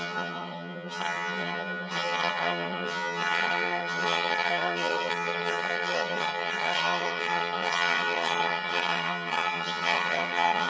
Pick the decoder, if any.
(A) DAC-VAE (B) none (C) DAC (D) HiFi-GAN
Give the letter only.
D